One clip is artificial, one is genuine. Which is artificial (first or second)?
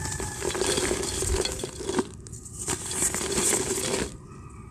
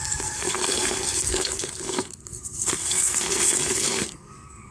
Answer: second